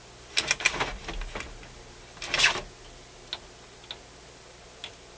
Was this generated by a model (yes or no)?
no